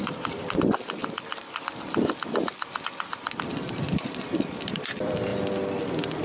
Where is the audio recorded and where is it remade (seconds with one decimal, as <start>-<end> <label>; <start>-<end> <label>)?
0.0-1.0 remade; 1.0-4.7 recorded; 4.7-5.3 remade; 5.3-6.2 recorded